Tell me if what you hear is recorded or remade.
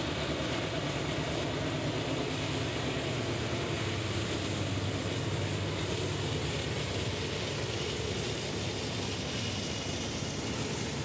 recorded